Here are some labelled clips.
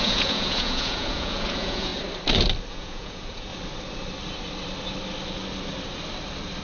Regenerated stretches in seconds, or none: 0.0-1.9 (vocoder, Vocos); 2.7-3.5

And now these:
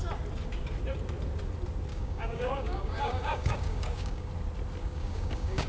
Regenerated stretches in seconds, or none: 1.9-4.3 (codec, DAC); 4.8-5.7

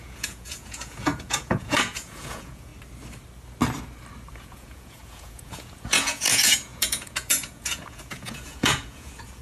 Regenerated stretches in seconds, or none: 0.0-2.7 (vocoder, Vocos); 4.3-9.4